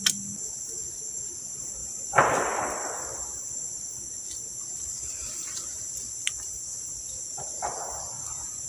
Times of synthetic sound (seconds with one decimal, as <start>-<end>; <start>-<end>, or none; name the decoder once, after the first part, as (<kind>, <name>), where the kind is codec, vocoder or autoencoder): 6.7-7.8 (vocoder, BigVGAN v2)